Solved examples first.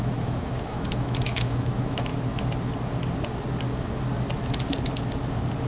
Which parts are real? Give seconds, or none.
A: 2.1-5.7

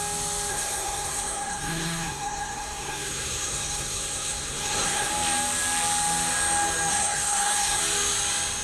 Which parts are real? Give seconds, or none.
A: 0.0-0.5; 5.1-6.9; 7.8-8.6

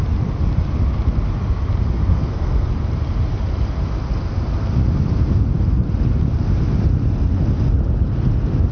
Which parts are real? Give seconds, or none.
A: 0.0-2.1; 2.7-8.7

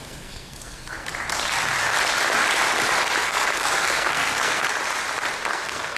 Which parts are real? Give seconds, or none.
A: 1.1-3.2; 4.7-5.5